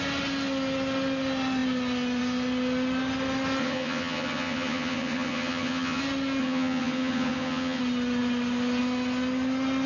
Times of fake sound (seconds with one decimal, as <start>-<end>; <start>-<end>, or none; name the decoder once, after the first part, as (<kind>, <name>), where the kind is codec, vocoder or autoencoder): 3.6-6.0 (vocoder, HiFi-GAN); 6.4-7.8